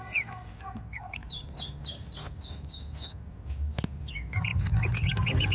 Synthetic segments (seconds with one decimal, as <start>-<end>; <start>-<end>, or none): none